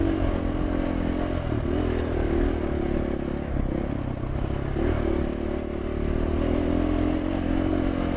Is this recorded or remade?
recorded